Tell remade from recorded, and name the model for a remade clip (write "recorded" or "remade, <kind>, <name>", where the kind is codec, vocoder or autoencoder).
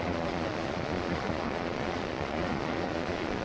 remade, vocoder, Vocos